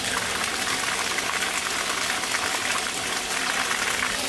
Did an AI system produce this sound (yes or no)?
no